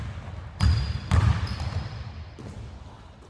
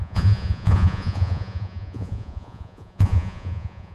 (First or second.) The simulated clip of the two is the second